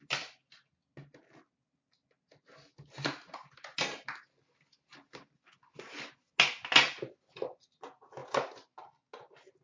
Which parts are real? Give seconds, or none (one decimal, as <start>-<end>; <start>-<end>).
0.0-9.6